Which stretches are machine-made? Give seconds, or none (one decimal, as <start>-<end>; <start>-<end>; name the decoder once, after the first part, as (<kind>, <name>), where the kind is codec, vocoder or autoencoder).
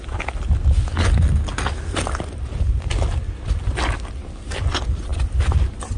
none